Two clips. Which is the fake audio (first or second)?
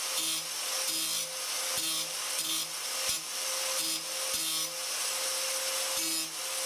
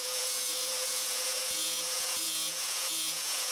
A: second